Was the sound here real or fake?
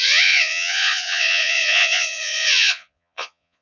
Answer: fake